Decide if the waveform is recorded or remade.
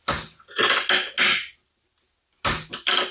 recorded